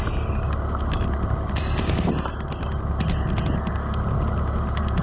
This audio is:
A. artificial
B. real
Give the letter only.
B